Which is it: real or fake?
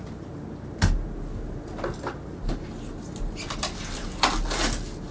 real